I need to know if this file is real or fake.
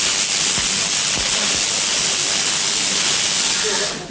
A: real